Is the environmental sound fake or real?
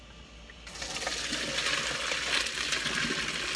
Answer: real